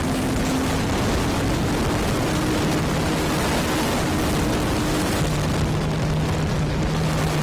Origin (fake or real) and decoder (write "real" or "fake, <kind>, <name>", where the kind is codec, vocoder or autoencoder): real